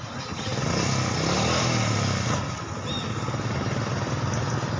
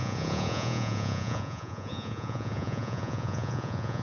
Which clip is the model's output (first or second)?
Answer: second